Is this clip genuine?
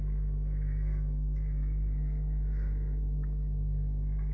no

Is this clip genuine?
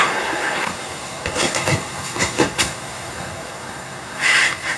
no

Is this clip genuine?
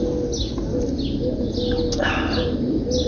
yes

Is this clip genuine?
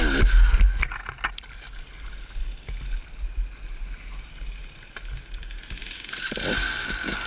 yes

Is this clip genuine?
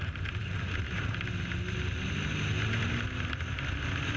yes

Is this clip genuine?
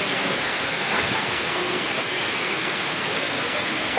no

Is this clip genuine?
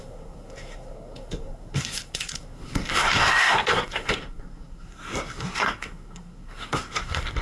no